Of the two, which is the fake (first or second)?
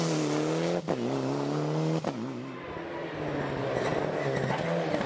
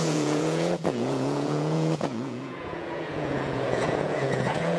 second